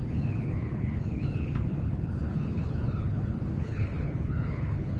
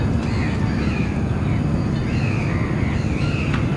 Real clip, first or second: second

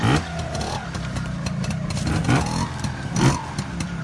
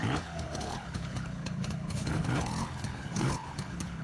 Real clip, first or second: first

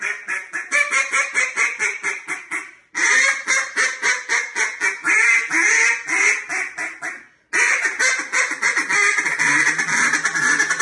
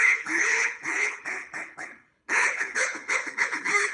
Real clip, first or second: first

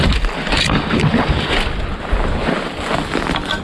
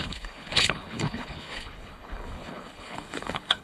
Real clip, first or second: first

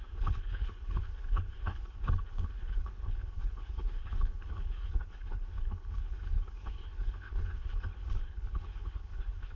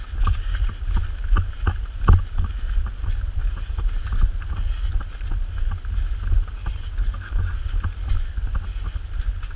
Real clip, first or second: second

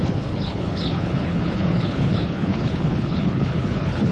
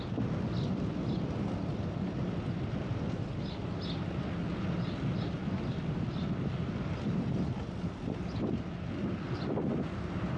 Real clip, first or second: second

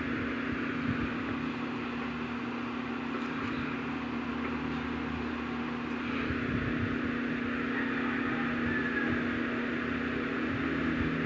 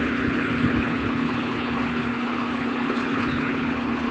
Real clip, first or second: first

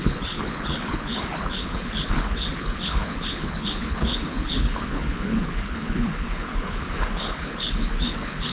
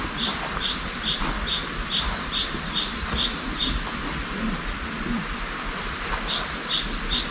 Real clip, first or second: second